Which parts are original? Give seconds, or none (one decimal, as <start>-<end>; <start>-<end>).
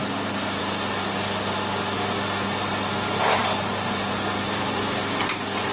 0.0-5.7